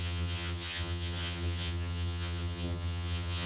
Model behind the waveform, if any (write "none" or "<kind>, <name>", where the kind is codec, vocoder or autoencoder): vocoder, HiFi-GAN